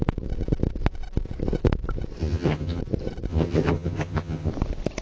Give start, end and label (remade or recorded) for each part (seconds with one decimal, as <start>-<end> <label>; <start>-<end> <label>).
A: 0.0-2.2 recorded; 2.2-2.8 remade; 2.8-3.3 recorded; 3.3-4.5 remade; 4.5-5.0 recorded